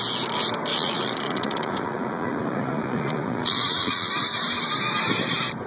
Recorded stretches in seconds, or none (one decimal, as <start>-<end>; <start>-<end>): 0.0-0.7; 4.1-5.7